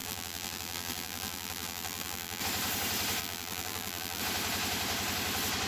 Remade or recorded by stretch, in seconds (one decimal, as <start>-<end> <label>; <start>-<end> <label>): 0.0-2.4 remade; 2.4-3.2 recorded; 3.2-4.2 remade; 4.2-5.7 recorded